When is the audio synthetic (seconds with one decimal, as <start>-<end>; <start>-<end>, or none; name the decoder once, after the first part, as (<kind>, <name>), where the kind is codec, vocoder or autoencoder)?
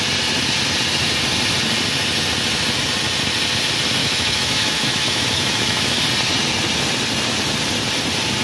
4.0-6.0 (autoencoder, DAC-VAE)